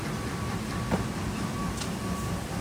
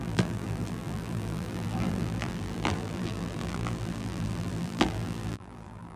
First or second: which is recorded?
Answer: first